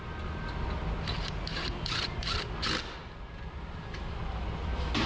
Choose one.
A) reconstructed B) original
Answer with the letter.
B